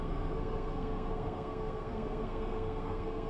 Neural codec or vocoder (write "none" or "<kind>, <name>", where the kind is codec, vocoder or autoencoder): codec, SNAC